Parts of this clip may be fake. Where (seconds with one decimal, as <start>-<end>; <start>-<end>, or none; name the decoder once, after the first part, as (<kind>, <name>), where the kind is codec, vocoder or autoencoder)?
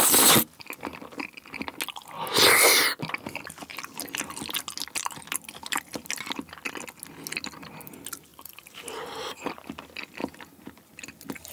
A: 8.3-9.5 (vocoder, BigVGAN v2); 10.2-10.8